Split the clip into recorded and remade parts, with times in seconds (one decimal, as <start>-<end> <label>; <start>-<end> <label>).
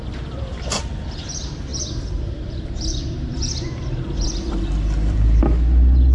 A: 0.0-1.7 recorded; 1.7-5.4 remade; 5.4-6.1 recorded